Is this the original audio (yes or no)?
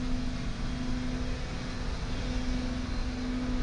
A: yes